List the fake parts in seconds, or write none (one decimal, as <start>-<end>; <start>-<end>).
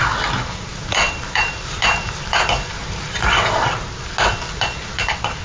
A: 0.7-3.9